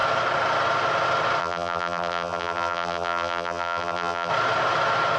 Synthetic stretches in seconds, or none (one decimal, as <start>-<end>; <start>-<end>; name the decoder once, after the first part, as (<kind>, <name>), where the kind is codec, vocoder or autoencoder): 1.4-4.3 (vocoder, BigVGAN v2)